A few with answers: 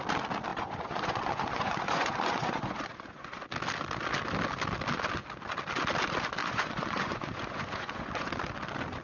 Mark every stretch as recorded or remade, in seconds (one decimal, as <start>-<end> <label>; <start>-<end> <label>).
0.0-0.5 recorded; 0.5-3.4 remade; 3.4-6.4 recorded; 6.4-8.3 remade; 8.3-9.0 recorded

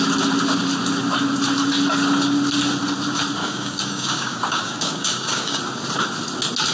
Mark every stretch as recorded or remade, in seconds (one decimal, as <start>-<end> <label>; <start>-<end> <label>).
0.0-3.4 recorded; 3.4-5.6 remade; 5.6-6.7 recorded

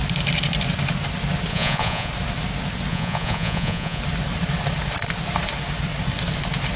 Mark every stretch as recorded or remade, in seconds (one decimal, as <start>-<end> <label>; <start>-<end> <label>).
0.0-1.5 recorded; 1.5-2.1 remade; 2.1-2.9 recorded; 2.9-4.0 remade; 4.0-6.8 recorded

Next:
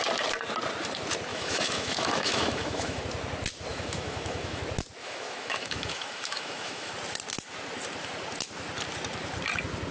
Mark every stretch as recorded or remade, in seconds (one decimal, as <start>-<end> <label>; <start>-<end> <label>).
0.0-1.3 recorded; 1.3-3.0 remade; 3.0-3.7 recorded; 3.7-4.6 remade; 4.6-5.0 recorded; 5.0-6.9 remade; 6.9-9.9 recorded